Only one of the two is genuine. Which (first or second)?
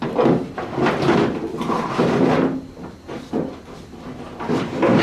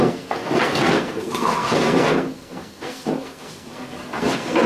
first